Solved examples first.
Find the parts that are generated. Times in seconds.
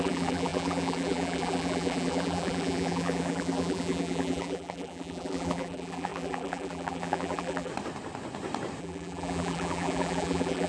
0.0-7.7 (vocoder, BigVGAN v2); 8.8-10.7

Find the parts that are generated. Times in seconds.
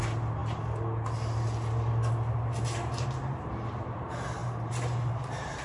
4.4-5.6 (vocoder, BigVGAN v2)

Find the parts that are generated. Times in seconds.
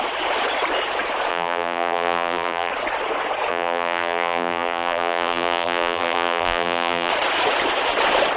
1.3-2.7 (vocoder, BigVGAN v2); 3.5-7.1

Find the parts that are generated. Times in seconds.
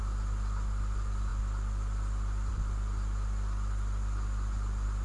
none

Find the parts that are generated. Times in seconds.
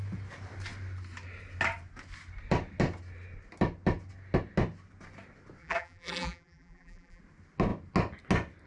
5.6-7.2 (vocoder, BigVGAN v2)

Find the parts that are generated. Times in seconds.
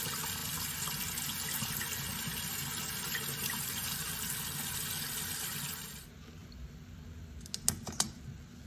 none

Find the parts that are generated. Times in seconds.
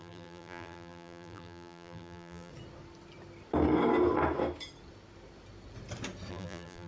0.0-2.5 (vocoder, BigVGAN v2); 6.3-6.9